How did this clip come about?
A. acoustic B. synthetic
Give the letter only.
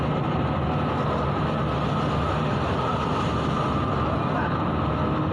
A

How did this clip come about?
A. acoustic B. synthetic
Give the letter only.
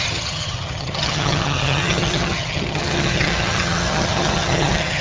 B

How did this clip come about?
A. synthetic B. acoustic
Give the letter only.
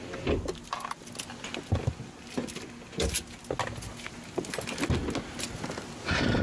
B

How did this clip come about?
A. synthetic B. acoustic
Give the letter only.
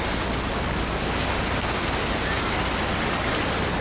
B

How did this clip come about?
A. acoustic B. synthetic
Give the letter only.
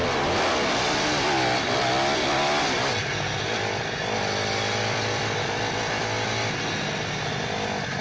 A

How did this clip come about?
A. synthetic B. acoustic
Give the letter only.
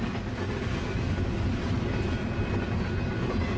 B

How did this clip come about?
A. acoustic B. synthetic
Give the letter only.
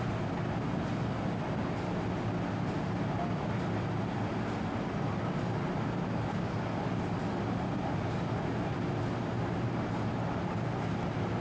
A